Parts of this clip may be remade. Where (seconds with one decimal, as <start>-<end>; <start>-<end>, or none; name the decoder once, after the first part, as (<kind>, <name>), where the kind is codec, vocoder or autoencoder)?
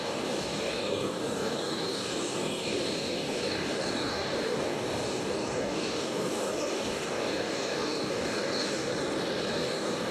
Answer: 0.0-8.9 (codec, DAC); 9.5-10.1